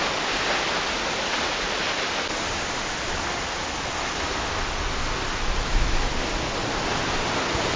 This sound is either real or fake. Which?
real